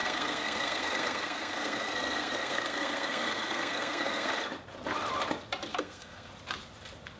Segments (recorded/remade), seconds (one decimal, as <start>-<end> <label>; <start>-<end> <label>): 0.0-4.3 remade; 4.3-5.7 recorded; 5.7-6.3 remade; 6.3-7.2 recorded